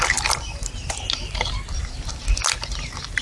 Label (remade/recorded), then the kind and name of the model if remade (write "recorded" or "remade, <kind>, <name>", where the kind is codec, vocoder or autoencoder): recorded